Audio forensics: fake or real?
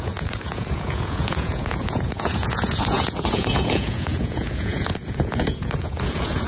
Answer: fake